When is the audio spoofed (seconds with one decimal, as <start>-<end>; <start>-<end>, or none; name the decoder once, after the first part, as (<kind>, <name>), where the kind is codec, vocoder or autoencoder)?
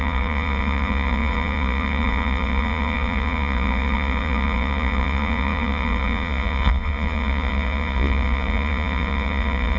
0.0-9.8 (vocoder, Vocos)